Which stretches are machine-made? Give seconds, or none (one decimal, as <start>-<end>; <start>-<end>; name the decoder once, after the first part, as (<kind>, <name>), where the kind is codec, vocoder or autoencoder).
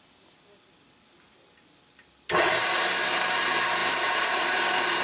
3.8-4.4 (vocoder, BigVGAN v2)